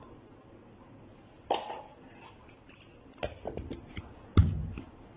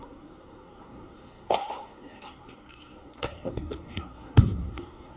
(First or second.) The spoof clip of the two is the second